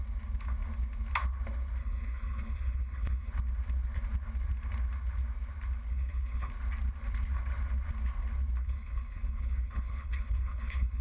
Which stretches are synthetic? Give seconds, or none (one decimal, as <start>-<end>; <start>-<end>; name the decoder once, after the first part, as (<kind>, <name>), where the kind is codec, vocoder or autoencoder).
1.8-3.3 (codec, HILCodec); 5.9-6.5; 8.6-11.0